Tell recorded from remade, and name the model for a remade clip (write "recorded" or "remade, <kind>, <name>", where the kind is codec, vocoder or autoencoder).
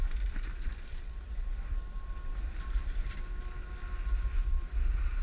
recorded